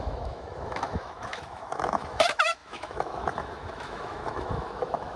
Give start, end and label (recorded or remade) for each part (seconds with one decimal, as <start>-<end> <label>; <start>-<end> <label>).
0.0-5.2 remade